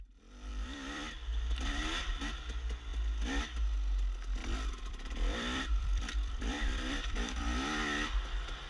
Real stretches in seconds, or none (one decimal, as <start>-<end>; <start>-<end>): 0.0-0.5; 2.1-4.4; 7.4-8.7